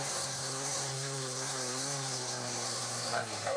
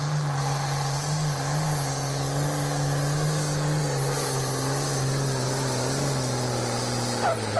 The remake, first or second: first